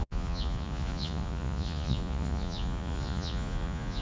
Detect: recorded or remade remade